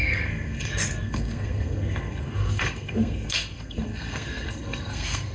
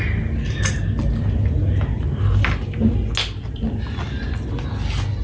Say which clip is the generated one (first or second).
first